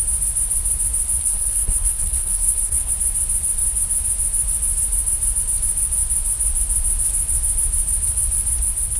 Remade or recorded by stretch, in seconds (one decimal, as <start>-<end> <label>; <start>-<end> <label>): 0.0-1.2 recorded; 1.2-2.9 remade; 2.9-9.0 recorded